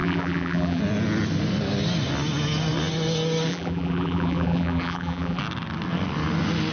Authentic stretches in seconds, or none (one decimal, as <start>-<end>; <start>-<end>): 0.8-3.5; 5.4-6.7